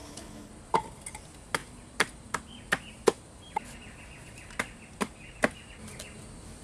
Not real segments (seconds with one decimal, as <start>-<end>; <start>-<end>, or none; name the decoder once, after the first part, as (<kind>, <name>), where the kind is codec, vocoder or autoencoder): 0.0-0.5 (codec, HILCodec)